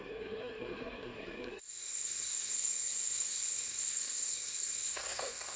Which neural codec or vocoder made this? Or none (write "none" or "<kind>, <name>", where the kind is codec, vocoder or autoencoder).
codec, SNAC